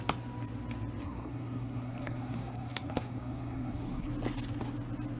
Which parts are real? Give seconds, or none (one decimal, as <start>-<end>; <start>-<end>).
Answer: 0.0-1.0; 4.1-5.2